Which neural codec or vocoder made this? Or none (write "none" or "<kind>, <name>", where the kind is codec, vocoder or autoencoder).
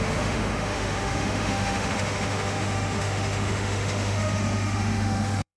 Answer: autoencoder, DAC-VAE